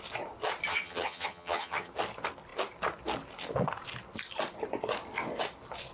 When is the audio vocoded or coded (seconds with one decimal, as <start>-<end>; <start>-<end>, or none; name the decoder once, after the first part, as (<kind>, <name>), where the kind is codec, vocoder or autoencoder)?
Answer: 0.7-1.9 (vocoder, HiFi-GAN)